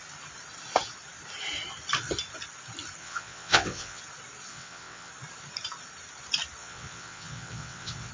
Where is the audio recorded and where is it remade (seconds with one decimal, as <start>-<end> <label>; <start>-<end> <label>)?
0.0-3.0 recorded; 3.0-4.0 remade; 4.0-4.5 recorded; 4.5-5.1 remade; 5.1-6.6 recorded; 6.6-8.1 remade